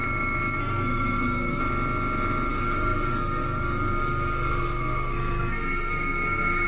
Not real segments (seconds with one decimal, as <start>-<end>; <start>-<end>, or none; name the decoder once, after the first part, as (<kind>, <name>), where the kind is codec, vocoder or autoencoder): 0.6-1.6 (codec, SNAC); 2.5-6.7